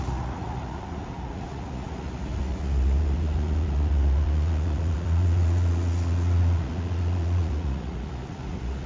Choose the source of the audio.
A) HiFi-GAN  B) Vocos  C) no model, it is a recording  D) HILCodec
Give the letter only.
B